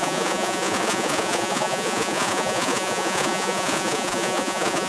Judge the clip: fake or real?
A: fake